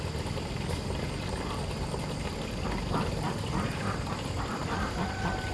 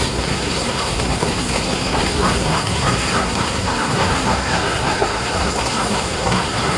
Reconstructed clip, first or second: second